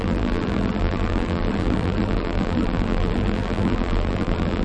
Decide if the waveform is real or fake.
fake